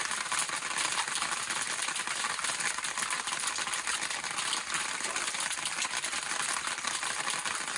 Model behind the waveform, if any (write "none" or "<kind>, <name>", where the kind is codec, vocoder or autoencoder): none